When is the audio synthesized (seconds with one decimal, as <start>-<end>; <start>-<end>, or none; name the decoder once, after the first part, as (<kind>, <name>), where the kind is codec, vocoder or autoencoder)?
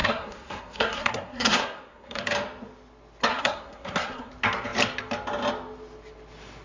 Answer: 0.0-2.2 (codec, SNAC); 3.3-4.3